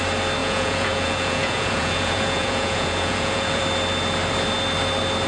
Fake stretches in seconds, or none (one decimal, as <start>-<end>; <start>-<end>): 0.4-3.6